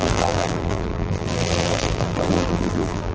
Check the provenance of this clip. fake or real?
fake